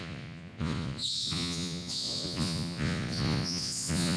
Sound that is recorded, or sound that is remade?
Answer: remade